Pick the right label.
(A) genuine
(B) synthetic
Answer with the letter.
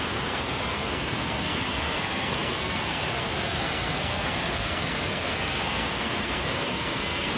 B